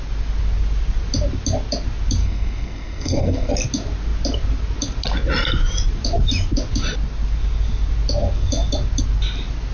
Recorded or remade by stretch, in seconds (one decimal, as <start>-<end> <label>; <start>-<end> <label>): 0.0-2.2 recorded; 2.2-3.5 remade; 3.5-9.7 recorded